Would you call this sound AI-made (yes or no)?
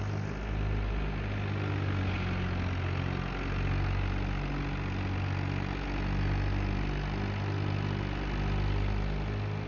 no